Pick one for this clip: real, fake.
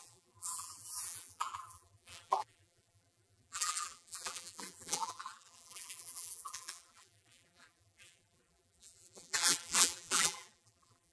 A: fake